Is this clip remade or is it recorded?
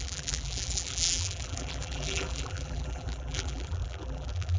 remade